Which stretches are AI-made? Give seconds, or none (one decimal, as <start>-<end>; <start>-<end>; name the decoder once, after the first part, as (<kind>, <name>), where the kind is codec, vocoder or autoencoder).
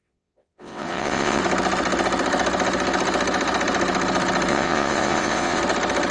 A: 0.0-1.4 (vocoder, WaveNeXt); 4.5-5.6